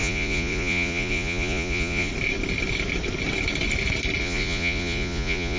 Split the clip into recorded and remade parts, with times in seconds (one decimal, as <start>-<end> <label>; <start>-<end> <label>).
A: 0.0-2.1 remade; 2.1-4.2 recorded; 4.2-5.6 remade